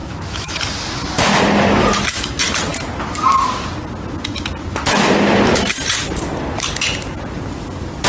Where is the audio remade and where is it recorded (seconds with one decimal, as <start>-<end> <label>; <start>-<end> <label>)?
0.0-0.6 remade; 0.6-8.1 recorded